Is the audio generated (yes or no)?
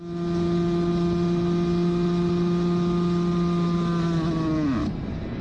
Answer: no